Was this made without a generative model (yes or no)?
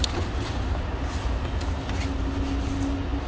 yes